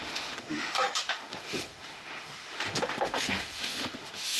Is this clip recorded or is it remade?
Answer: remade